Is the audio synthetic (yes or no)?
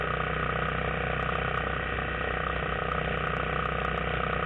no